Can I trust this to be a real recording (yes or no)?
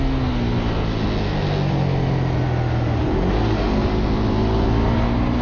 yes